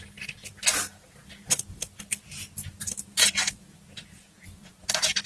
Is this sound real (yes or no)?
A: yes